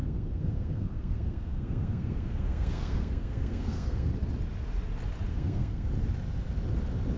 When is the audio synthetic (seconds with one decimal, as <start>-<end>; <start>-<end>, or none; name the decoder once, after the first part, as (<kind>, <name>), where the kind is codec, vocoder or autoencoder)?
0.0-4.1 (codec, SNAC); 5.3-5.9